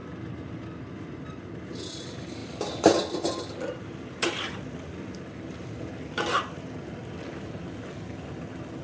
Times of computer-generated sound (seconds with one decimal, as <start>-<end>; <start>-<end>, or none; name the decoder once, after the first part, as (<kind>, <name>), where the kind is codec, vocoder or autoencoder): 2.4-4.4 (vocoder, BigVGAN v2)